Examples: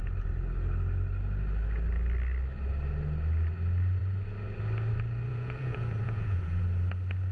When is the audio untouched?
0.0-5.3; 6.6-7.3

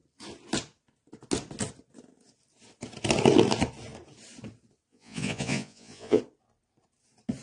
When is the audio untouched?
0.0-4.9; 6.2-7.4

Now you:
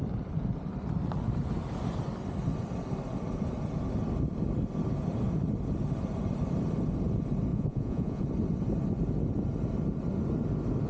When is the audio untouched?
0.0-7.5; 8.2-10.9

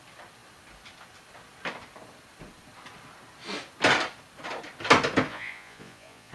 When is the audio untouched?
0.0-5.3